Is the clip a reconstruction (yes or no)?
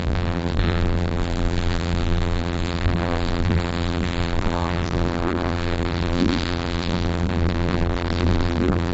yes